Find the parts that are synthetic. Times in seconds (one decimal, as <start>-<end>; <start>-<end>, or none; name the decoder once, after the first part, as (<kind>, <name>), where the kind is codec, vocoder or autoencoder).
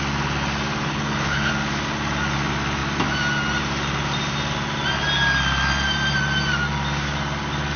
0.9-1.5 (codec, HILCodec)